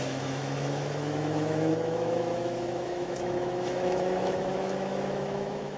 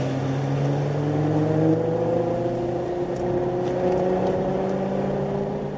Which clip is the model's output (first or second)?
first